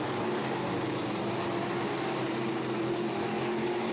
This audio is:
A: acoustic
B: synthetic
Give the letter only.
A